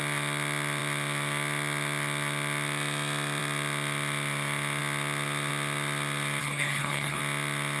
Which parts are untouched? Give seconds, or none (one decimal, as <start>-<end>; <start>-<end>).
0.0-6.4; 7.2-7.8